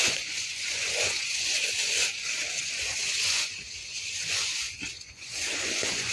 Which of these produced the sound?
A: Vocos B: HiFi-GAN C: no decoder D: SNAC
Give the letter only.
A